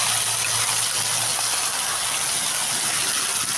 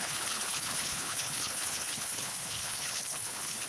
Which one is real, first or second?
first